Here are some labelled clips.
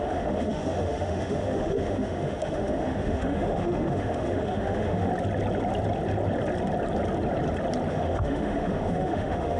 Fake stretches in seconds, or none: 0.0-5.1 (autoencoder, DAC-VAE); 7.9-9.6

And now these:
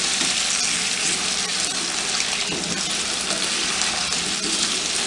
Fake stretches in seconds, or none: none

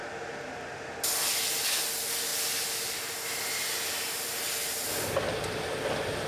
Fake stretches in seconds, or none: none

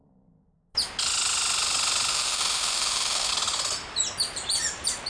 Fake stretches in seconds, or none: 2.1-3.3 (autoencoder, DAC-VAE)

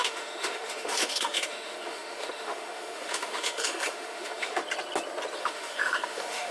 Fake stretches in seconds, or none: 0.0-4.6 (autoencoder, DAC-VAE); 5.4-6.5